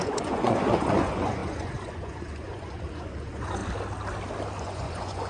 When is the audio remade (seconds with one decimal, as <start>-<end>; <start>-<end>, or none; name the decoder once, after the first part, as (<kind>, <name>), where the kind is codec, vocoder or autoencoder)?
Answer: 0.0-3.6 (vocoder, Vocos); 4.6-5.3